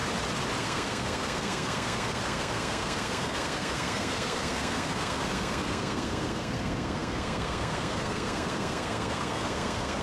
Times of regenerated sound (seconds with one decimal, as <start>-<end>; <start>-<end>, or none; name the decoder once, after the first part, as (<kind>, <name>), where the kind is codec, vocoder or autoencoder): 0.6-10.0 (codec, SNAC)